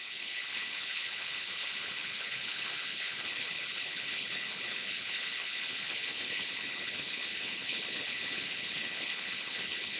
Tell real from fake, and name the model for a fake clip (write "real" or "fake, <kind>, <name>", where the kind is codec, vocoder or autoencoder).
fake, codec, HILCodec